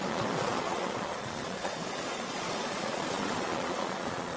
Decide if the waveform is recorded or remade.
remade